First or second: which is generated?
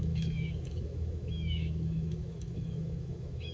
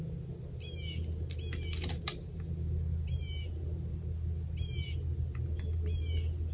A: first